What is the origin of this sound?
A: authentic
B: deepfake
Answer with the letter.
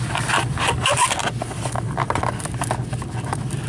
A